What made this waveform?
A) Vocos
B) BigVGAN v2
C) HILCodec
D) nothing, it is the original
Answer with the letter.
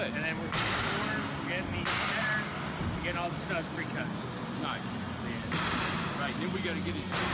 D